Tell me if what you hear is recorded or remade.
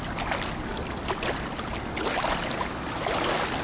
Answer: recorded